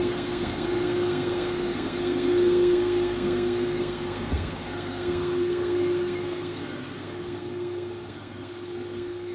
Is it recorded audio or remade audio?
remade